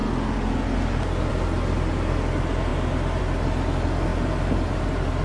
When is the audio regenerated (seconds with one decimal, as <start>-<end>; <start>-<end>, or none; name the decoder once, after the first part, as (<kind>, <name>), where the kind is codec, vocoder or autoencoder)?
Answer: none